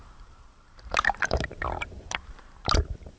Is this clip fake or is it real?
fake